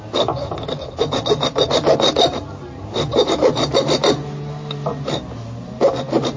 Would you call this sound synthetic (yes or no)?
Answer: no